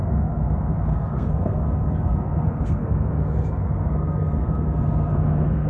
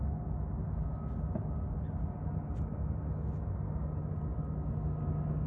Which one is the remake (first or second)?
first